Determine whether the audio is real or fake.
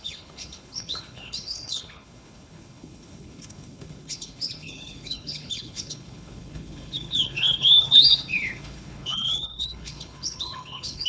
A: fake